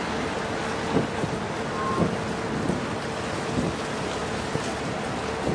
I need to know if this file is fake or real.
real